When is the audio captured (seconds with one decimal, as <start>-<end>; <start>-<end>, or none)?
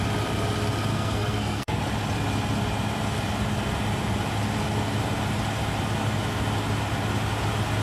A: 0.0-0.9; 1.8-7.8